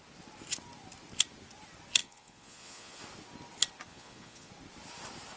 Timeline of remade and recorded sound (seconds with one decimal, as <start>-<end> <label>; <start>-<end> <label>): 0.0-2.0 recorded; 2.0-3.0 remade; 3.0-3.9 recorded; 3.9-4.5 remade; 4.5-5.4 recorded